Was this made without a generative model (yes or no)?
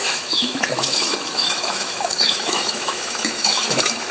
no